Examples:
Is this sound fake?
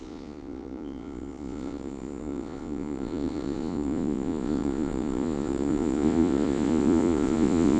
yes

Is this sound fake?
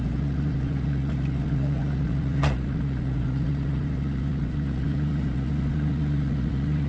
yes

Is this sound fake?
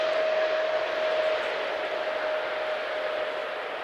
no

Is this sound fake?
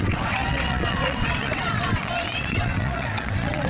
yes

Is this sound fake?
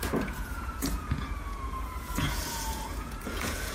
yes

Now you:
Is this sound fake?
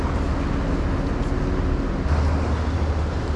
no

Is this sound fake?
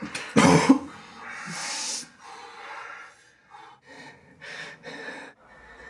no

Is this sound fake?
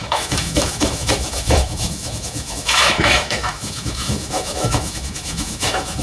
yes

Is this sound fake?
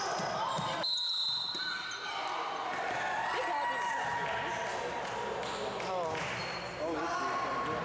no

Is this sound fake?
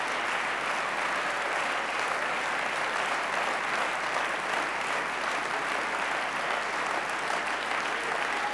no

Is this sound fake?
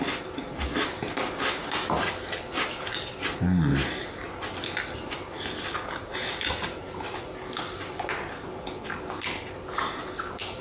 no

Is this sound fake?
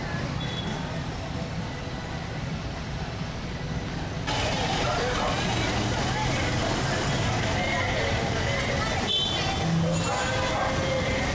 no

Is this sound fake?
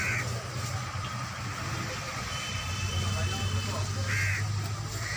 no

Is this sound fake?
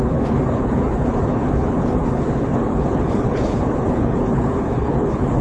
yes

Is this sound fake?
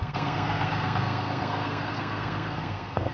yes